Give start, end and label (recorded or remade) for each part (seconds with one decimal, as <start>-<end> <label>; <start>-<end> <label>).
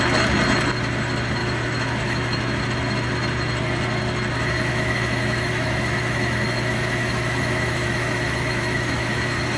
0.0-1.4 recorded; 1.4-2.6 remade; 2.6-4.7 recorded; 4.7-9.2 remade; 9.2-9.6 recorded